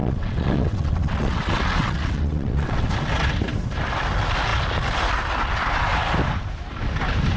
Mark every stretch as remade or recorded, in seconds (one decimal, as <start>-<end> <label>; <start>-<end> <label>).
0.0-2.9 remade; 2.9-7.4 recorded